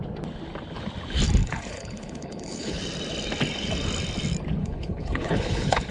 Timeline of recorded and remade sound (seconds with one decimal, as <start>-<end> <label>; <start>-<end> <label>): 0.0-1.4 recorded; 1.4-2.8 remade; 2.8-4.6 recorded; 4.6-5.9 remade